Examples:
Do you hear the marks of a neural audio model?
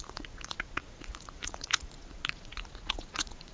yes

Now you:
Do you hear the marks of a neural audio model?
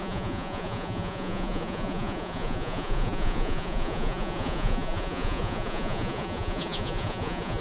yes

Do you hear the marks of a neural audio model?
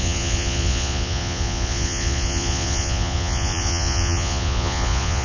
yes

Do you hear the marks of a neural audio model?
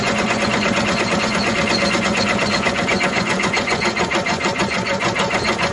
yes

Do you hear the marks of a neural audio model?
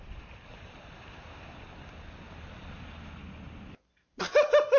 no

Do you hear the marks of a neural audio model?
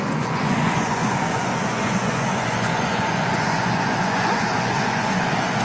yes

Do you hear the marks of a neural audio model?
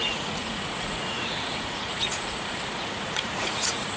yes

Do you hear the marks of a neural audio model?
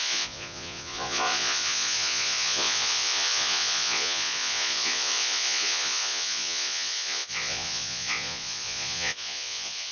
yes